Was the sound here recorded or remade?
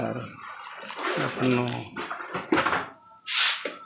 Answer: recorded